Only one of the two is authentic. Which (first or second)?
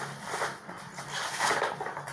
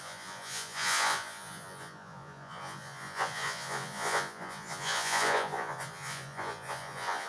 first